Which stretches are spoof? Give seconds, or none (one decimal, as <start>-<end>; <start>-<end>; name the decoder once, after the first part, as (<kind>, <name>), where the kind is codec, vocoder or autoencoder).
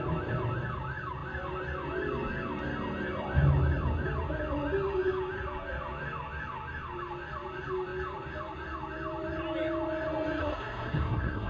10.4-11.5 (codec, SNAC)